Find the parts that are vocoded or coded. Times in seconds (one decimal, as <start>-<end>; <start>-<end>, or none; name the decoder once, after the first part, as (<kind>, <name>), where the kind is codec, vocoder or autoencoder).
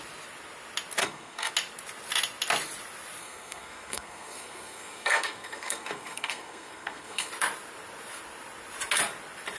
1.0-1.5 (codec, SNAC); 3.2-7.3